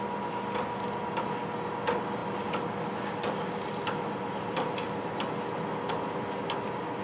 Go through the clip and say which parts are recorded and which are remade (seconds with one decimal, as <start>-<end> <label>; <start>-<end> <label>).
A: 0.0-7.0 recorded